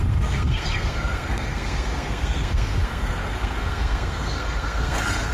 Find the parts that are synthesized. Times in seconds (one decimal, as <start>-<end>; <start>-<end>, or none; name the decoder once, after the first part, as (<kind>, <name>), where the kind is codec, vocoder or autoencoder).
0.0-5.3 (codec, SNAC)